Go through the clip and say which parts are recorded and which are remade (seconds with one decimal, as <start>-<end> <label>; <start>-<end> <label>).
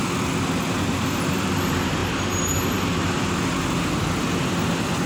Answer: 0.0-1.6 recorded; 1.6-2.0 remade; 2.0-5.1 recorded